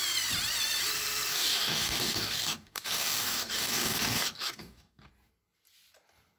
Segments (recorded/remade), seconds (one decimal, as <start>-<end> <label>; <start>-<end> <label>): 0.0-1.3 recorded; 1.3-5.1 remade; 5.1-6.4 recorded